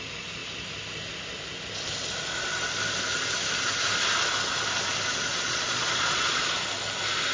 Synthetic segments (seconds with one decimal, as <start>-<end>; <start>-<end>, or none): 5.3-6.4